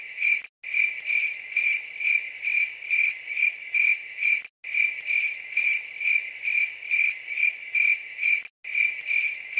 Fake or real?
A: real